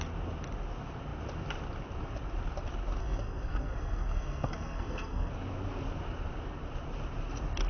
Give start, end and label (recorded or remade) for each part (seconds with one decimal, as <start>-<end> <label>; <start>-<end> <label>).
0.0-3.0 recorded; 3.0-5.3 remade; 5.3-7.7 recorded